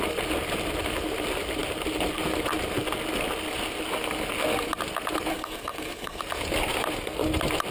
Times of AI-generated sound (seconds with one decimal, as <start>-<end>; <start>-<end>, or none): 5.3-6.2